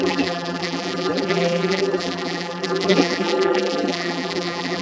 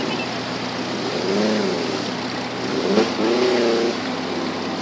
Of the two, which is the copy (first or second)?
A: first